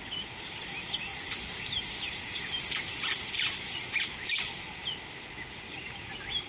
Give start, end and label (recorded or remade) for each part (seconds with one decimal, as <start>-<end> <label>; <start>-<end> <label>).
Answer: 0.0-1.1 recorded; 1.1-5.0 remade; 5.0-6.5 recorded